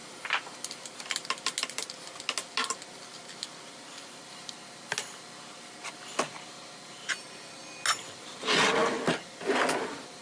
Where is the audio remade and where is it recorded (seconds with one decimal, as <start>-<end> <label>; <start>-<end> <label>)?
0.0-10.2 recorded